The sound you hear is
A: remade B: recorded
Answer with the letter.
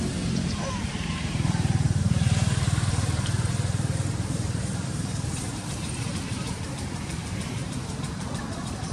A